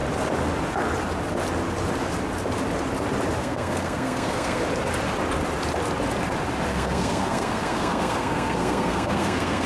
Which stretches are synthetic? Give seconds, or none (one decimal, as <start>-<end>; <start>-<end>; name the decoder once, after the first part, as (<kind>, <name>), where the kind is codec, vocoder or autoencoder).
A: 3.4-4.6 (codec, SNAC); 6.7-9.7